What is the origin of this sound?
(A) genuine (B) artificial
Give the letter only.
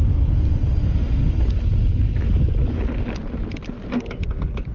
A